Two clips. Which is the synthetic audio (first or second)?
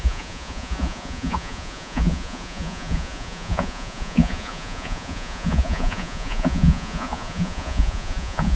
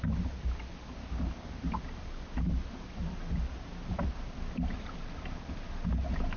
first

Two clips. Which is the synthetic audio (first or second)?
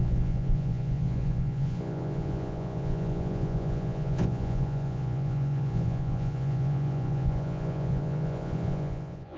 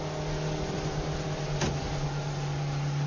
first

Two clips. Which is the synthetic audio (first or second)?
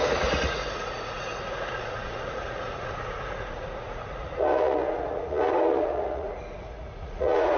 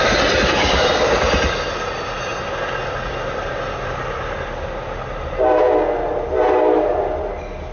first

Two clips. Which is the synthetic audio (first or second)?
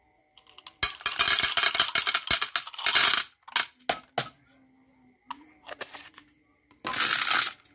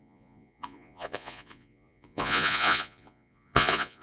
second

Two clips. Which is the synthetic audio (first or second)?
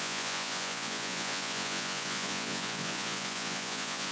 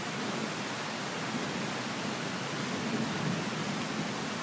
first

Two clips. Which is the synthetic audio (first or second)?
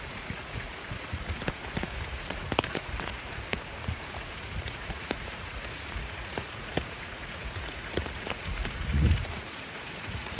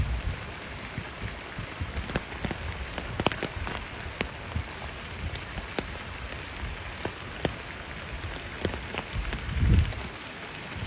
first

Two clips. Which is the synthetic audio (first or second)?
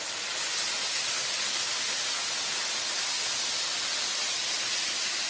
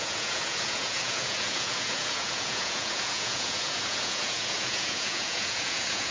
second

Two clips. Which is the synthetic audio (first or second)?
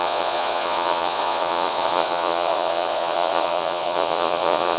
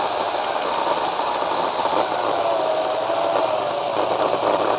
first